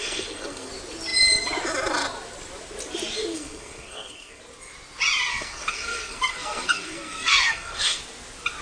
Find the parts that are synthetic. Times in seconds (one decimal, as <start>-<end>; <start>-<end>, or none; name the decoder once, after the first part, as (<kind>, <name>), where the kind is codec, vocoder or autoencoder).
0.0-0.7 (codec, SNAC); 3.3-4.4; 5.3-8.0